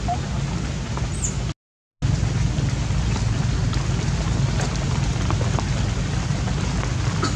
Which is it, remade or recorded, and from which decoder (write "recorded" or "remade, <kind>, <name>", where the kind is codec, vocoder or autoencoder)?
recorded